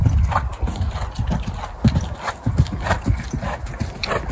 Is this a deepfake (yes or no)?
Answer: no